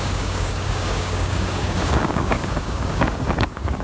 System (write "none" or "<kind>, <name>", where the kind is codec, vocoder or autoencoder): codec, DAC